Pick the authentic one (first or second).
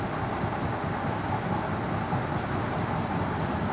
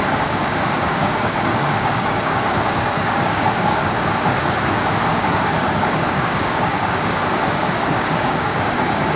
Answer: first